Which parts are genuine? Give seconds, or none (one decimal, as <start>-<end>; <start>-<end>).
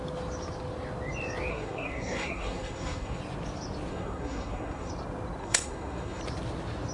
0.0-1.5; 3.2-3.9; 4.9-5.4; 6.2-6.9